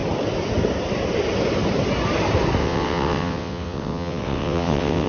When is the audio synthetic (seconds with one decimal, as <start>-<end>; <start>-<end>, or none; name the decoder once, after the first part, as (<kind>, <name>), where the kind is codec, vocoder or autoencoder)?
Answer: 2.6-5.1 (vocoder, WaveNeXt)